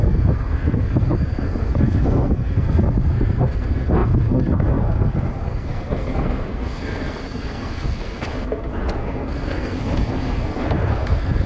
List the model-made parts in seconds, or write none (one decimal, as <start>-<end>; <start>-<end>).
0.0-11.5